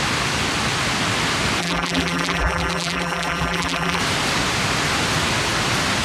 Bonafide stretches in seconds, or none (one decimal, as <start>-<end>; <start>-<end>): 0.0-1.6; 4.0-6.0